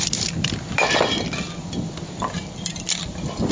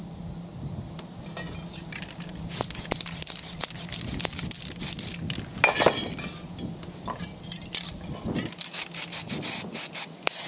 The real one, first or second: second